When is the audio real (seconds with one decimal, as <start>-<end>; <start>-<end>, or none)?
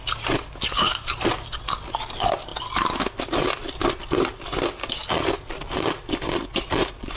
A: 0.0-7.2